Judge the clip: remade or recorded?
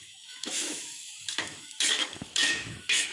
remade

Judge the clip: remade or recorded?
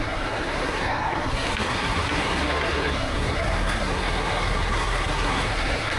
remade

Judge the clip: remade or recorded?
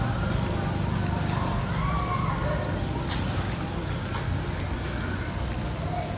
recorded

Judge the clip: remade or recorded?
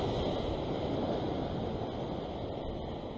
recorded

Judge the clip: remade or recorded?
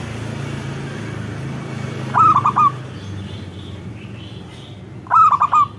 recorded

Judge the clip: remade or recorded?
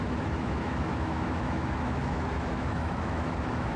remade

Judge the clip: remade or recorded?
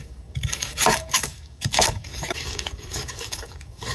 remade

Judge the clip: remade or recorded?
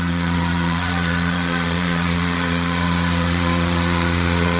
remade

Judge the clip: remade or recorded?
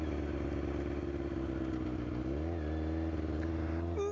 recorded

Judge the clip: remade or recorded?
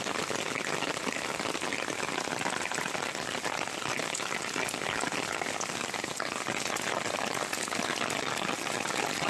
recorded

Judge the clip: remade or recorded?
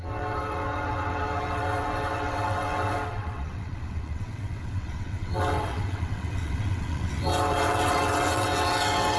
remade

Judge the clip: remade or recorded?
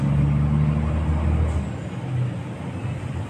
recorded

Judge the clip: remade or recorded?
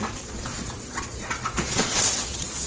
remade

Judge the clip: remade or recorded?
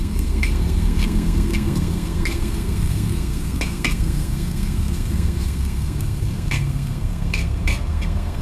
remade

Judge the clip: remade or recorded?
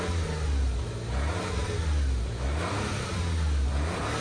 recorded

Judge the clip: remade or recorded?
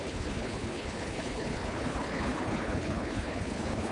remade